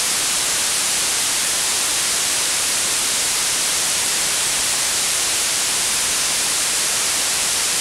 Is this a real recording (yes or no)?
no